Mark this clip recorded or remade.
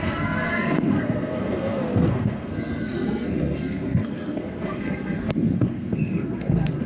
remade